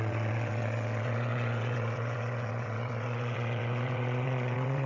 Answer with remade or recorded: remade